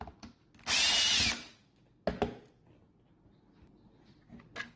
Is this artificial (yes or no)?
no